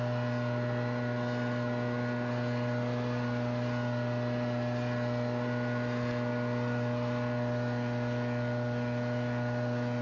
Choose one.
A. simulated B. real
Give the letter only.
B